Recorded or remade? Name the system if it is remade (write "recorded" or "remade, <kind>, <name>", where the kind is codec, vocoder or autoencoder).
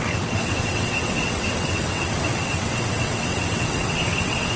remade, vocoder, WaveNeXt